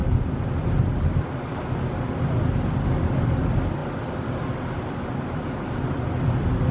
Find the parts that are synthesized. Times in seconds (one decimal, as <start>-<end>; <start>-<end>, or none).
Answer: none